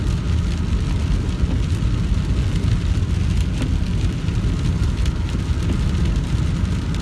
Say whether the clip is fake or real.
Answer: real